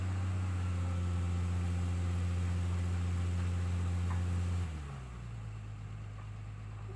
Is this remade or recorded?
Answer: recorded